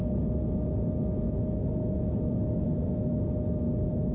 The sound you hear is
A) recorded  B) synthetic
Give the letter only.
A